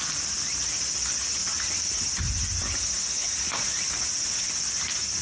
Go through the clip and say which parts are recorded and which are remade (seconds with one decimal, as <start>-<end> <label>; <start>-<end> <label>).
0.0-1.4 recorded; 1.4-2.0 remade; 2.0-3.2 recorded; 3.2-4.4 remade; 4.4-5.2 recorded